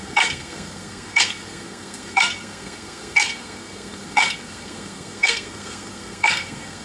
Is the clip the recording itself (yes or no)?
no